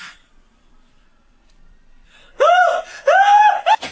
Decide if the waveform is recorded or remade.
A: remade